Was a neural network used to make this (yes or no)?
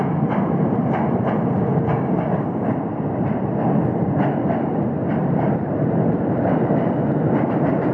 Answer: yes